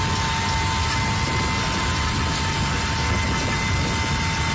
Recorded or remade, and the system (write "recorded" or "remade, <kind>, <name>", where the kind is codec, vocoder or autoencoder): recorded